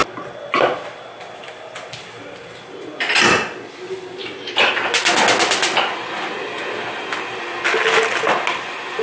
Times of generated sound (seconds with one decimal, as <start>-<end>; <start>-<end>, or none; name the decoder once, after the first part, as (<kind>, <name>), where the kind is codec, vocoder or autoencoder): none